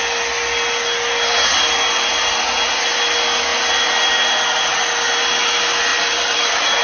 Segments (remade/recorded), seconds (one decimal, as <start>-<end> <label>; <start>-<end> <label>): 0.0-5.9 recorded; 5.9-6.8 remade